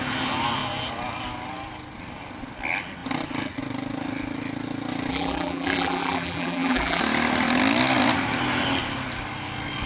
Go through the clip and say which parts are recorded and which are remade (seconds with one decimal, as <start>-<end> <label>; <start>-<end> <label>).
0.0-5.1 recorded; 5.1-7.0 remade; 7.0-9.9 recorded